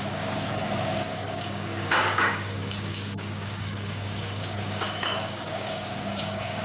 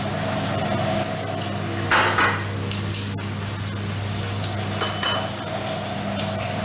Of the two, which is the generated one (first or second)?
first